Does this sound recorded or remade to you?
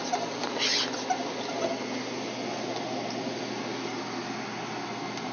recorded